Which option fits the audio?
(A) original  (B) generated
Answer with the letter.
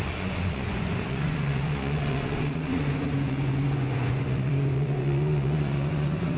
B